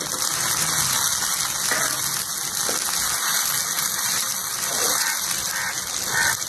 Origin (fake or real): real